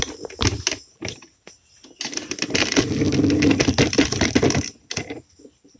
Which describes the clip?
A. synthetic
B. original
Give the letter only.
B